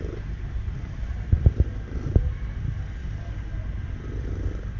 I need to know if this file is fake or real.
real